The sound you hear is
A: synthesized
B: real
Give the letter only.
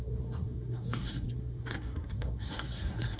A